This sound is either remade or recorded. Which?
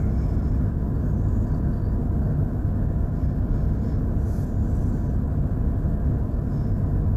recorded